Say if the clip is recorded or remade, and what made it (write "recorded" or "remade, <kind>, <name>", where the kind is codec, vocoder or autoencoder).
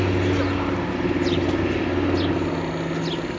recorded